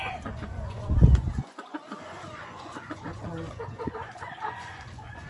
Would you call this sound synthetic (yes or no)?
yes